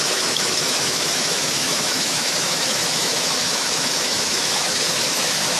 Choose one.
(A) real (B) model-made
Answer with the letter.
B